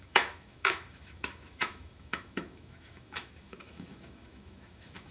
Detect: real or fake fake